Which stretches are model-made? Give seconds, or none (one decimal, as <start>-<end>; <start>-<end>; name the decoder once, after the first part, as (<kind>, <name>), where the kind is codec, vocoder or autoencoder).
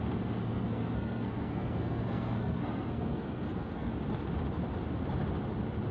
0.4-3.9 (codec, SNAC)